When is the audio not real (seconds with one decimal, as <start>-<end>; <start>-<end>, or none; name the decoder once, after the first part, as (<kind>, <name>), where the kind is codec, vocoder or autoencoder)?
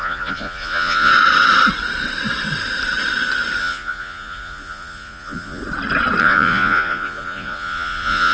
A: 0.0-1.1 (vocoder, Vocos); 3.6-5.6; 6.2-8.3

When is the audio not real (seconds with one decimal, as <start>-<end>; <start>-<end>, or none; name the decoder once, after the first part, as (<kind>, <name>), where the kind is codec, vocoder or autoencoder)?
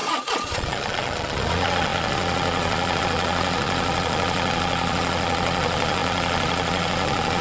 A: 0.0-7.4 (vocoder, Vocos)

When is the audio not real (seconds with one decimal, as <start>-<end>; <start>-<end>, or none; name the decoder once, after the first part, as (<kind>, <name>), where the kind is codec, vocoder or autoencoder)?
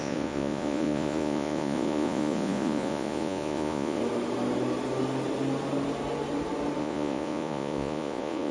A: 0.0-4.0 (vocoder, Vocos); 6.8-8.5